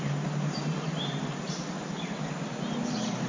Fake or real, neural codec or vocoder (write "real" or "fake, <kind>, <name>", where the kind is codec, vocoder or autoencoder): real